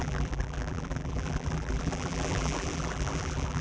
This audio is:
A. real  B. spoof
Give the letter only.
B